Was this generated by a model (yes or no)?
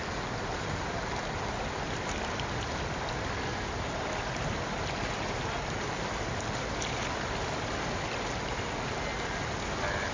no